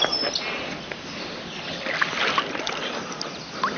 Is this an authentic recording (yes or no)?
yes